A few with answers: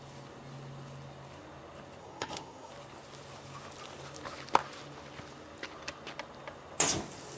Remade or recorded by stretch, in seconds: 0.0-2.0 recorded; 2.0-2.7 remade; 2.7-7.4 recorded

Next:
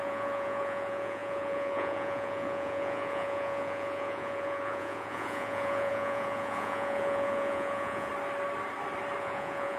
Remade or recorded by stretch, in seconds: 0.0-8.1 remade; 8.1-9.2 recorded; 9.2-9.8 remade